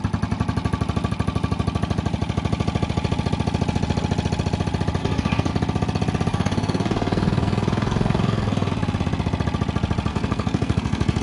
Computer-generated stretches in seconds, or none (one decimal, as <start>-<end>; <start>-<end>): 5.0-5.5; 6.3-8.7; 10.1-11.2